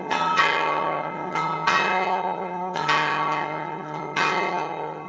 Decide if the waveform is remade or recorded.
remade